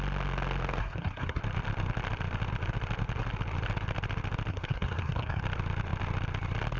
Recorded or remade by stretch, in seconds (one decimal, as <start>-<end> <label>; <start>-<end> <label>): 0.0-0.8 recorded; 0.8-1.4 remade; 1.4-4.5 recorded; 4.5-5.4 remade; 5.4-6.8 recorded